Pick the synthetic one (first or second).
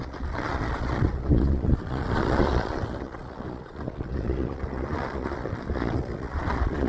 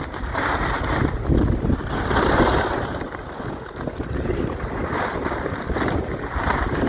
first